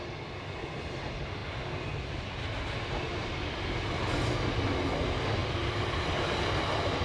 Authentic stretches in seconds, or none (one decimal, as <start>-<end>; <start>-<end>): 0.0-7.0

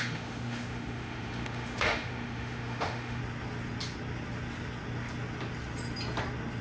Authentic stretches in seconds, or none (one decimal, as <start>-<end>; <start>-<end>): 3.2-6.6